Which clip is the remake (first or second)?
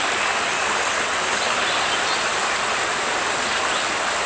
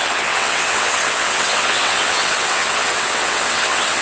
second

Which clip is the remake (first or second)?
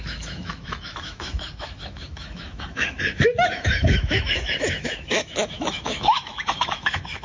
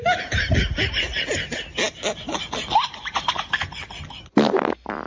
first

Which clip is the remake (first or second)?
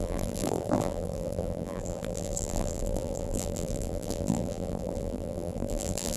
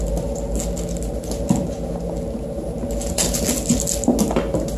first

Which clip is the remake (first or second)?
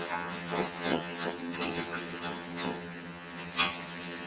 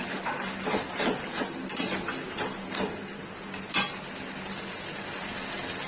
first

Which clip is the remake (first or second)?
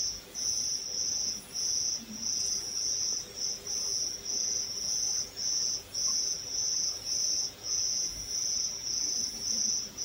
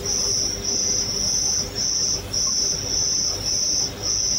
first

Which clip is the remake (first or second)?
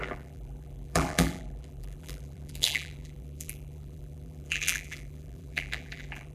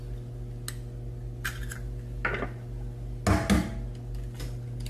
first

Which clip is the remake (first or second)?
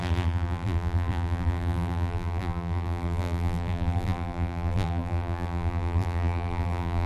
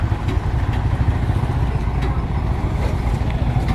first